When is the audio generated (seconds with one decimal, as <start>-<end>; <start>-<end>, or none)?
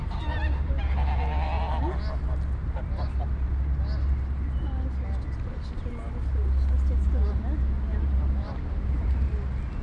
0.0-0.8; 2.6-3.1; 7.9-9.3